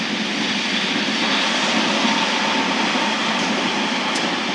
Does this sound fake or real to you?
real